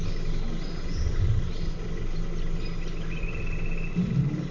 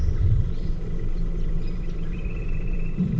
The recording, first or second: first